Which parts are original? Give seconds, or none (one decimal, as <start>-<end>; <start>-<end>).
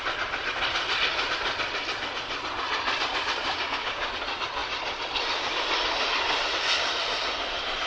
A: 0.0-3.4; 4.1-7.9